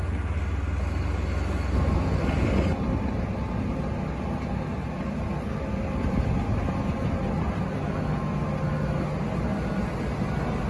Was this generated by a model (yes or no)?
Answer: no